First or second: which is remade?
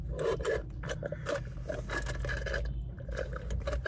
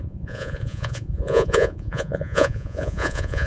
second